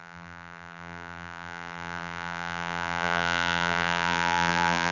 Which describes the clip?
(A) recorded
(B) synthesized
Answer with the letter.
B